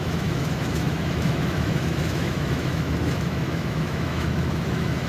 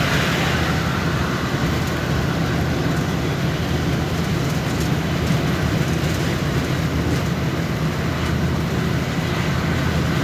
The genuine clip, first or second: second